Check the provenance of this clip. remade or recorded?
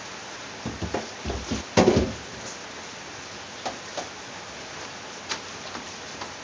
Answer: recorded